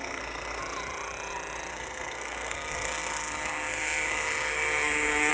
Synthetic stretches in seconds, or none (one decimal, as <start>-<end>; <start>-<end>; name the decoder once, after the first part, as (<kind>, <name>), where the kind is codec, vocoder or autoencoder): 0.0-0.6 (codec, SNAC); 1.7-5.3